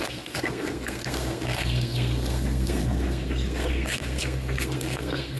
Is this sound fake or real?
fake